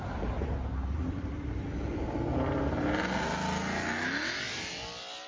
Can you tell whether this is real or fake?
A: real